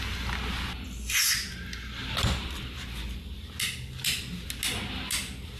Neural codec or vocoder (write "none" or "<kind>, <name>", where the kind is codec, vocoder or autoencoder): none